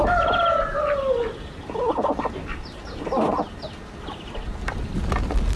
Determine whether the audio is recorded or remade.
recorded